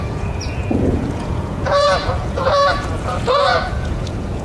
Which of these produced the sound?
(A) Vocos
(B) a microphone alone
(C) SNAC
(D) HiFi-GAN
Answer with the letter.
A